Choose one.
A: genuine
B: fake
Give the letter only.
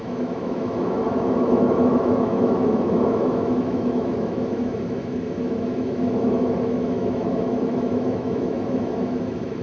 B